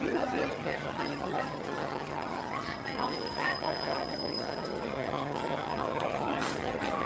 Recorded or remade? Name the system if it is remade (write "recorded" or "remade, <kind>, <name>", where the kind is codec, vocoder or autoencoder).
remade, vocoder, HiFi-GAN